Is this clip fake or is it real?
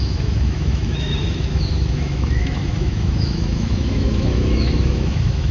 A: fake